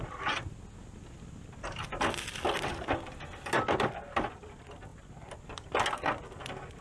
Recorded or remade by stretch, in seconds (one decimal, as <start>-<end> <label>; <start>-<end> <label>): 0.0-6.8 recorded